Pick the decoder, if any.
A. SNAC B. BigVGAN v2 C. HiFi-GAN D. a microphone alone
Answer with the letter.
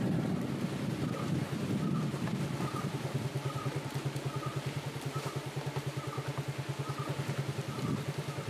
D